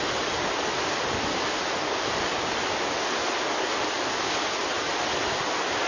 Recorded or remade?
recorded